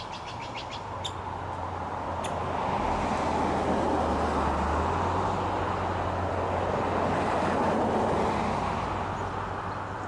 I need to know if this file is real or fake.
real